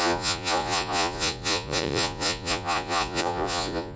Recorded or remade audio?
remade